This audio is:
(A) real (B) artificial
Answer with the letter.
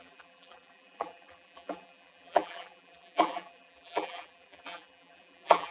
B